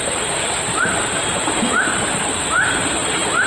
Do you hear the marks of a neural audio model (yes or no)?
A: no